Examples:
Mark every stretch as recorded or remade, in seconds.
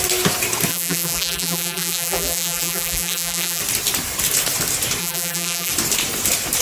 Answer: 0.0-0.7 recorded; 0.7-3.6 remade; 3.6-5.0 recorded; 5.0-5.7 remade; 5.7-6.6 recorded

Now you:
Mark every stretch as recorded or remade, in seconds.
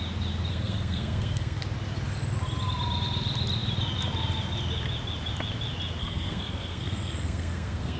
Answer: 0.0-0.5 recorded; 0.5-1.6 remade; 1.6-6.0 recorded; 6.0-8.0 remade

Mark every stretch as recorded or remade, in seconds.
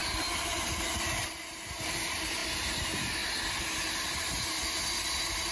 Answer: 0.0-5.5 recorded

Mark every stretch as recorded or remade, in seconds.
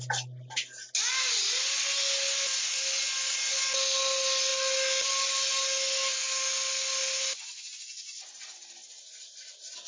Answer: 0.0-9.9 recorded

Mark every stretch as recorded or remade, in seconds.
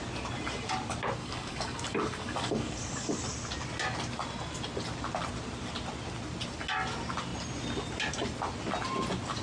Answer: 0.0-1.2 recorded; 1.2-3.2 remade; 3.2-9.4 recorded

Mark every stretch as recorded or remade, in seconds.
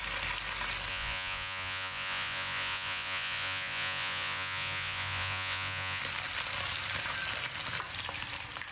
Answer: 0.0-0.9 recorded; 0.9-6.0 remade; 6.0-8.7 recorded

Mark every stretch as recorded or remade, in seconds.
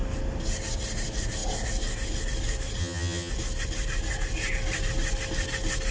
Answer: 0.0-2.8 recorded; 2.8-3.3 remade; 3.3-5.9 recorded